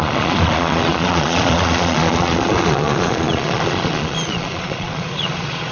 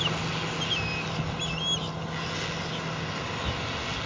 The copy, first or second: first